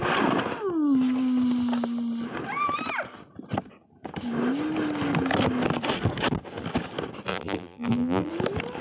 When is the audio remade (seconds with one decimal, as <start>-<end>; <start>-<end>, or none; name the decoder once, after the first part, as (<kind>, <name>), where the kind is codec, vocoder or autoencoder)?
7.3-8.3 (vocoder, BigVGAN v2)